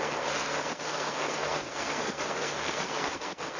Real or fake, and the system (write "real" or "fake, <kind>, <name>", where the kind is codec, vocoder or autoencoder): fake, codec, SNAC